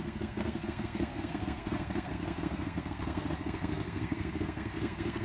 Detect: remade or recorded remade